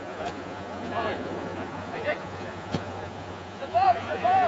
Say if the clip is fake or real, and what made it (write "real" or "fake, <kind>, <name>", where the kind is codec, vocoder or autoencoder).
fake, vocoder, Vocos